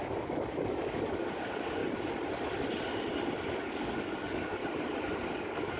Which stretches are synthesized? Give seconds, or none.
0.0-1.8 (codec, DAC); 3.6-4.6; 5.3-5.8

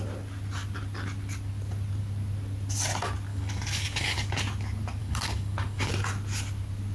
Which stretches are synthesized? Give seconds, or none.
3.3-4.3 (codec, DAC); 5.0-5.9

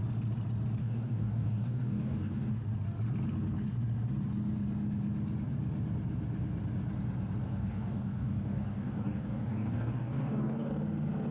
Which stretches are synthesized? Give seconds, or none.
0.8-2.5 (codec, DAC); 7.4-10.7